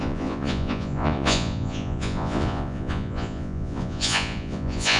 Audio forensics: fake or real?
fake